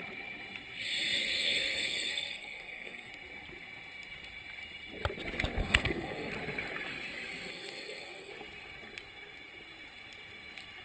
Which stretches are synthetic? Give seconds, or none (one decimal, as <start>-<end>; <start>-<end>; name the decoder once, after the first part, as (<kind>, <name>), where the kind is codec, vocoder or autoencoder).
1.2-3.1 (codec, SNAC); 5.6-6.3; 7.5-8.3

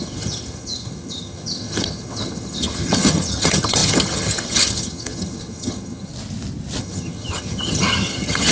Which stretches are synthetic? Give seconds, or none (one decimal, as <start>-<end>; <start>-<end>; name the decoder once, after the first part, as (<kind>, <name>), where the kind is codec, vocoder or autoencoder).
0.0-6.1 (vocoder, HiFi-GAN); 6.8-8.5